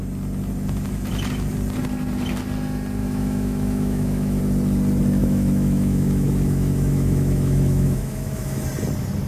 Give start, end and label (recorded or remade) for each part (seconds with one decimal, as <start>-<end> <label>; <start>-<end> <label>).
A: 0.0-3.0 recorded; 3.0-4.4 remade; 4.4-5.2 recorded; 5.2-8.6 remade; 8.6-9.3 recorded